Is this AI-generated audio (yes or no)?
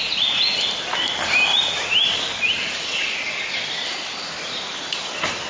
no